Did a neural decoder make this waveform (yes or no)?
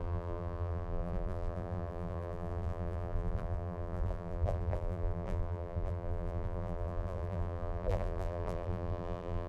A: yes